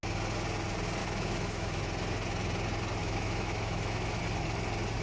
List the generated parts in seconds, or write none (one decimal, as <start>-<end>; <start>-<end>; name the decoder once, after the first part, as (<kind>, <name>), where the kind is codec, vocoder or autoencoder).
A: 1.0-1.8 (autoencoder, DAC-VAE); 3.0-4.2